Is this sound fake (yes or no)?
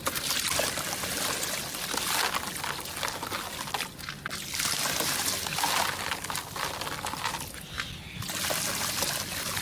no